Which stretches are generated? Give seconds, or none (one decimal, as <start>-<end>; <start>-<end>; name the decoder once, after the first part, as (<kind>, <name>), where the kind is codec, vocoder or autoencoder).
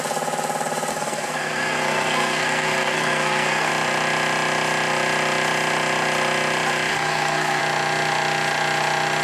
0.9-3.7 (codec, SNAC); 6.9-7.6